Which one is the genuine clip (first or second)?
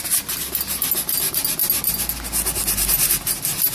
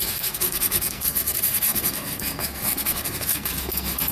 first